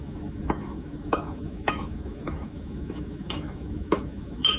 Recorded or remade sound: remade